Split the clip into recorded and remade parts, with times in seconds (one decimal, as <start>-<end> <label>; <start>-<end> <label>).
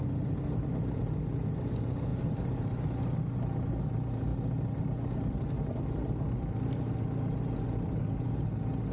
0.0-8.9 recorded